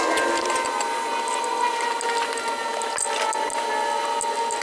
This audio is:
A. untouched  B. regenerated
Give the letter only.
A